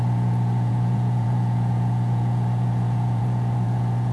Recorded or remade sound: remade